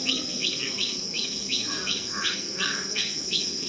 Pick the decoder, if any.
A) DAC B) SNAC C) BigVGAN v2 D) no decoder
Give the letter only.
B